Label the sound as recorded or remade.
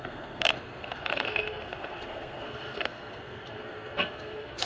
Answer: remade